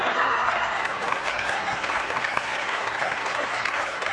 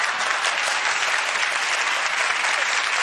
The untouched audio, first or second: second